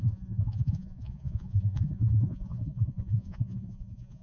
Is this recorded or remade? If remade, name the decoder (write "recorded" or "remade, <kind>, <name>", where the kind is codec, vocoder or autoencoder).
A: remade, vocoder, Vocos